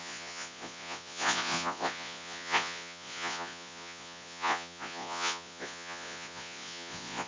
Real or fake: fake